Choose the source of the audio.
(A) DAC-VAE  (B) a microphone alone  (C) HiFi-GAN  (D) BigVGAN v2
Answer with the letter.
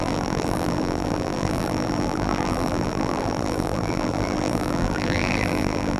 D